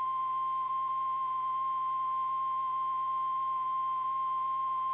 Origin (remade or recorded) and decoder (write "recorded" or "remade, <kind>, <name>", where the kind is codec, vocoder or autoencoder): remade, vocoder, Vocos